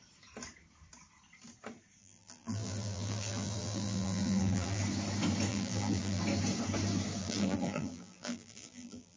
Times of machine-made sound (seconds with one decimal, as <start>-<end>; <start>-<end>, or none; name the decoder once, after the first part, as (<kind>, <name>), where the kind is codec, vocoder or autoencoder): 2.0-4.8 (vocoder, BigVGAN v2); 5.5-6.2; 7.2-9.2